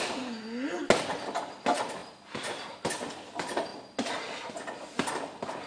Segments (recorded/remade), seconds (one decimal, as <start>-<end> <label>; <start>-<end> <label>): 0.0-5.7 recorded